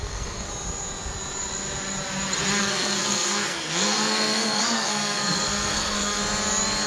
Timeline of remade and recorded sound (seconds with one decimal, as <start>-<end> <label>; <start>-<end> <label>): 0.0-0.5 remade; 0.5-2.6 recorded; 2.6-6.2 remade; 6.2-6.9 recorded